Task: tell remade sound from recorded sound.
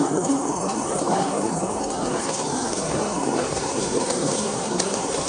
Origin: remade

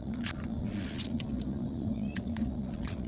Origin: remade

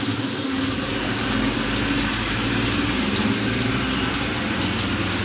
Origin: recorded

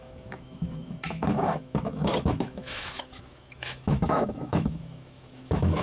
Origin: remade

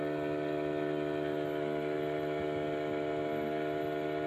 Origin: recorded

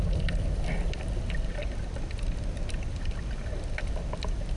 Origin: recorded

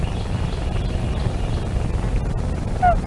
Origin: recorded